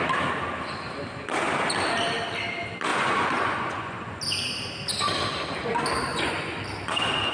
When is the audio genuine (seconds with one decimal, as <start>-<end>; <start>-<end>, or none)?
0.0-2.9; 4.2-6.1; 6.6-7.3